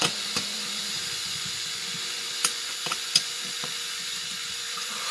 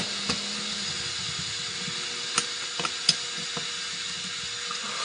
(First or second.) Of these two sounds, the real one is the second